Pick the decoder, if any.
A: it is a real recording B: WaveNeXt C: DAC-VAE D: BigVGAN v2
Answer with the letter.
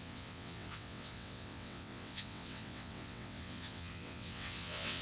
B